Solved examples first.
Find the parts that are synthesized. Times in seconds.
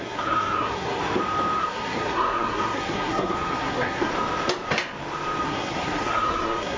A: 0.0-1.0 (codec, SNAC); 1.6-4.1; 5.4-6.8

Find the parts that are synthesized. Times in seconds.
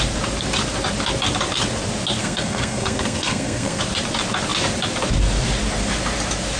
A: 2.2-3.8 (codec, SNAC)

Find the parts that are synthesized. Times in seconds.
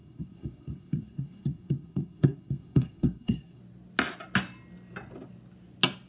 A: 0.0-3.6 (codec, SNAC)